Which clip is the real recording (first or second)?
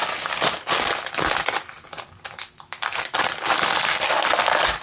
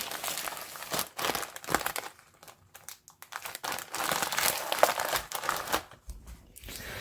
second